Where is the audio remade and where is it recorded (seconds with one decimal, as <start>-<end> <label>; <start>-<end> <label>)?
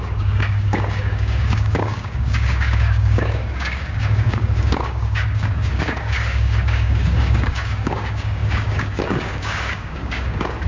0.0-10.7 remade